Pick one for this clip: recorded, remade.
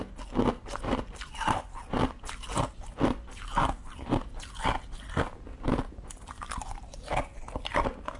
recorded